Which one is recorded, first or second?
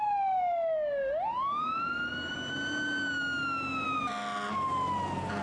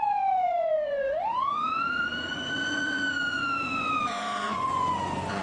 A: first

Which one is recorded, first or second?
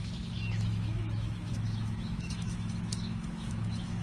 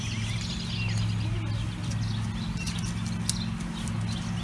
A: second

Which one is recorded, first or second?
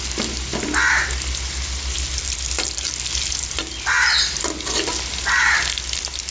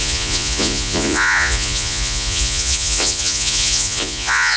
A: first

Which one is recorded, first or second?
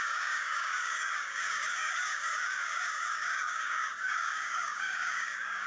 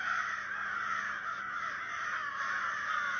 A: second